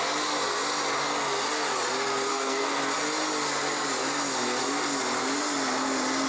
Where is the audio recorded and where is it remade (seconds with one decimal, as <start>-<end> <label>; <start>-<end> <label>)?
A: 0.0-2.3 recorded; 2.3-2.8 remade; 2.8-6.3 recorded